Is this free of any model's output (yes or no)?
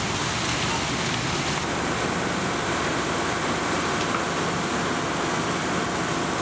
yes